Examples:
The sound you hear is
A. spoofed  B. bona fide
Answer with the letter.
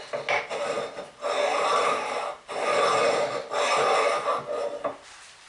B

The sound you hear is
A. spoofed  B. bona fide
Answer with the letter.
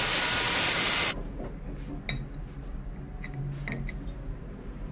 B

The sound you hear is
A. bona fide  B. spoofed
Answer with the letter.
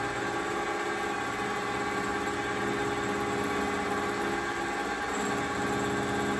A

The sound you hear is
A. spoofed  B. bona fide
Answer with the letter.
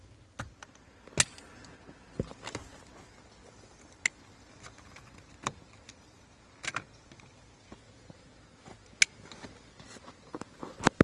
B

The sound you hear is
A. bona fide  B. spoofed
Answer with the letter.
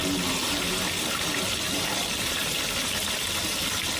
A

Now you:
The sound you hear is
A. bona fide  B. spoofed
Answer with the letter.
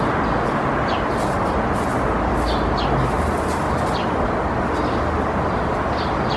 A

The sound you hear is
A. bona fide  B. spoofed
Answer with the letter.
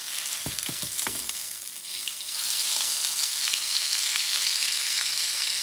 B